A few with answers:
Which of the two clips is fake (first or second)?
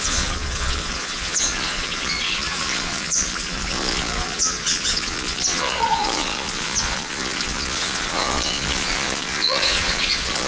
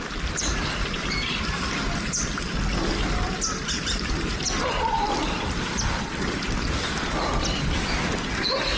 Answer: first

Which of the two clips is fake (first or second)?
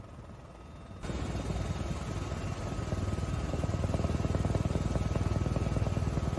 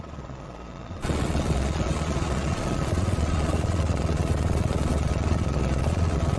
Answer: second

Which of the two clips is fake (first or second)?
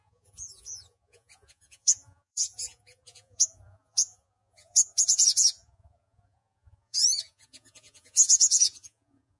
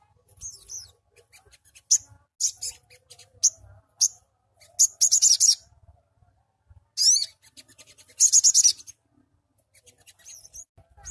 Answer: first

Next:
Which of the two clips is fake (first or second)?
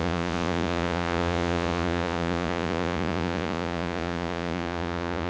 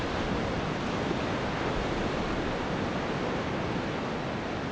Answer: first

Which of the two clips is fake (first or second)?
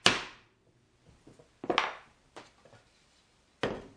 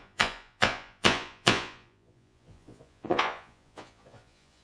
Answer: second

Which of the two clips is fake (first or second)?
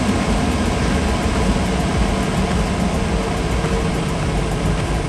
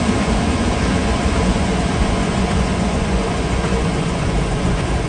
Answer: second